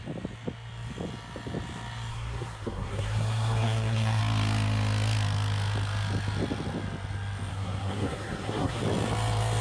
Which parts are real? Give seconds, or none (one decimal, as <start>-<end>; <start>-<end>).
0.0-2.1; 4.2-7.5; 8.8-9.6